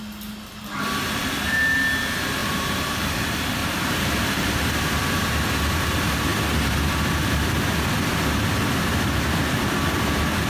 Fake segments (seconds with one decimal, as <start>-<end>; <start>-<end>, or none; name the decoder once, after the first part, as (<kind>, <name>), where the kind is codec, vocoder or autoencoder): 2.4-3.1 (vocoder, BigVGAN v2); 3.6-4.5